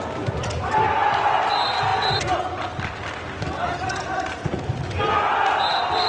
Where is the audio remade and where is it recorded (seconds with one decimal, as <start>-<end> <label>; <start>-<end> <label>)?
0.0-6.1 recorded